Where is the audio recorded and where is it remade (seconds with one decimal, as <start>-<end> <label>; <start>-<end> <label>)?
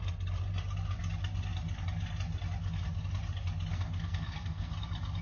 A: 0.0-3.7 recorded; 3.7-4.7 remade; 4.7-5.2 recorded